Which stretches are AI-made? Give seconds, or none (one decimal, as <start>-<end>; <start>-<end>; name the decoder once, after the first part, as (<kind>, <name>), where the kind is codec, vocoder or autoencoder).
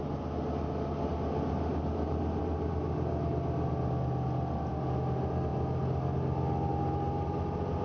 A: none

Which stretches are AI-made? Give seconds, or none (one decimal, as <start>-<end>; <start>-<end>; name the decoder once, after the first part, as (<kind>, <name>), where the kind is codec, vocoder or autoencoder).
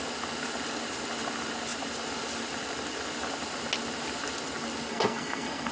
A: 4.9-5.7 (codec, SNAC)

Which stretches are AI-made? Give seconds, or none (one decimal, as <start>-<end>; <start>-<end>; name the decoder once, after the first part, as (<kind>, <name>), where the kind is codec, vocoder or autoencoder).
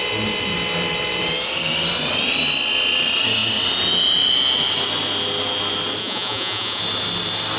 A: 6.0-6.8 (vocoder, Vocos)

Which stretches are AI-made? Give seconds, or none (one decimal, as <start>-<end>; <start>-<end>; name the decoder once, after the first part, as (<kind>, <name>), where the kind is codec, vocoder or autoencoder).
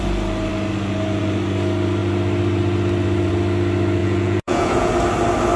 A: 4.0-4.9 (vocoder, Vocos)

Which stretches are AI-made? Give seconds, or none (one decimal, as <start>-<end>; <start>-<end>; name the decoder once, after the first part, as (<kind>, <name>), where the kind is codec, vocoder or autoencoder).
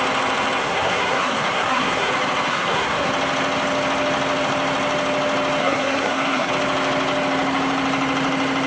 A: 0.6-2.1 (codec, SNAC); 2.5-3.1; 5.6-6.5